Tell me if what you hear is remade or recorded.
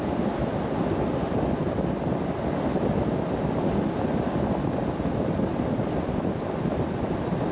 recorded